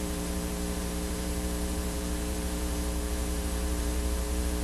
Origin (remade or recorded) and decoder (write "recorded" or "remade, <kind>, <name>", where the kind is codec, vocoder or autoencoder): remade, vocoder, BigVGAN v2